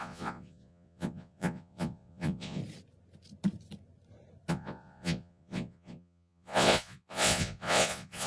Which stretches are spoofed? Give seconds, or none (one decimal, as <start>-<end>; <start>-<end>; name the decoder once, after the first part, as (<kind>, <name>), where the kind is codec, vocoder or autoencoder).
0.0-2.6 (vocoder, Vocos); 4.5-8.3

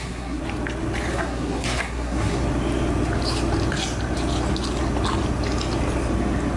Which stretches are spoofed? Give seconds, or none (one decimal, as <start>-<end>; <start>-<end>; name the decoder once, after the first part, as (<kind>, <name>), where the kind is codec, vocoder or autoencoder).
0.0-0.4 (codec, SNAC); 1.1-2.4

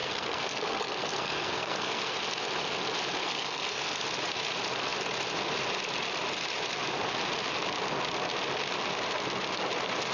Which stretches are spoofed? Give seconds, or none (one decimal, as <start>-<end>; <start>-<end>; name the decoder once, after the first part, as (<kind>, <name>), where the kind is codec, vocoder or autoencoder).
0.0-2.1 (codec, SNAC); 3.2-4.0

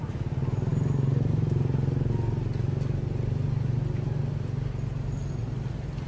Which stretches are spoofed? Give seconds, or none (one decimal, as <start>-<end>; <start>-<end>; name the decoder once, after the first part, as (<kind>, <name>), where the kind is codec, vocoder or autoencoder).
none

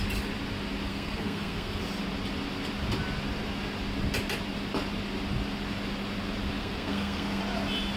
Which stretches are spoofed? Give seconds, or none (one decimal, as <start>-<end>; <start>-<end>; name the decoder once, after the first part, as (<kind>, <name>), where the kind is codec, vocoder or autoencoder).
0.9-1.8 (codec, SNAC); 6.6-7.4

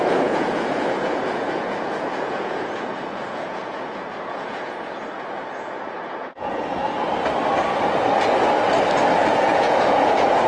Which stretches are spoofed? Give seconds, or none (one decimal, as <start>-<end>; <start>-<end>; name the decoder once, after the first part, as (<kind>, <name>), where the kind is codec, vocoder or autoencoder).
0.0-6.8 (vocoder, Vocos); 9.2-10.5

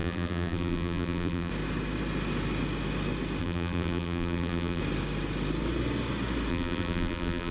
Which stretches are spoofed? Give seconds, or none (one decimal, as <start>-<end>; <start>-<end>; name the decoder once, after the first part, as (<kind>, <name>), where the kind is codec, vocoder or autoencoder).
0.0-1.5 (vocoder, BigVGAN v2); 3.4-4.8; 6.5-7.5